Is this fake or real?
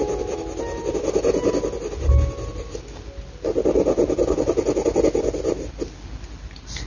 real